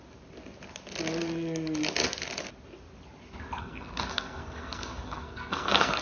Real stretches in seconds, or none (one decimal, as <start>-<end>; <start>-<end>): 0.0-3.6